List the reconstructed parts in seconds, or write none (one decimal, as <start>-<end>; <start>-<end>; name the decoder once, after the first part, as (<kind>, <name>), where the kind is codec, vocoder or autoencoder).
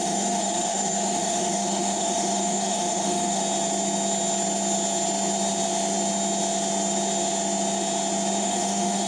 0.0-3.4 (autoencoder, DAC-VAE); 8.4-9.1